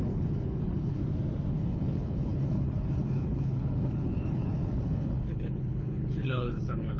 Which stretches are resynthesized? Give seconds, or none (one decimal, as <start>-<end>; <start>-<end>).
0.0-1.0; 1.5-7.0